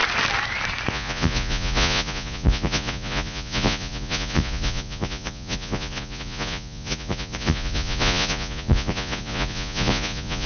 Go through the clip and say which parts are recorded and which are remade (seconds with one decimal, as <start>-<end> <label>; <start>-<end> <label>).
0.0-0.9 recorded; 0.9-10.5 remade